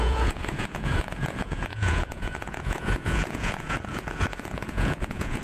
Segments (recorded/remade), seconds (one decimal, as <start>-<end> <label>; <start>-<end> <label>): 0.0-5.4 remade